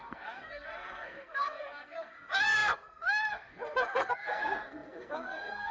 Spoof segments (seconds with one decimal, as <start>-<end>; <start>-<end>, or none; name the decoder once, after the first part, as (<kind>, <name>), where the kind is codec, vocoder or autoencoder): 0.0-5.7 (codec, SNAC)